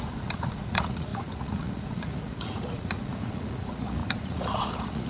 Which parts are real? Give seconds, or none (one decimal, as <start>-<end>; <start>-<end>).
none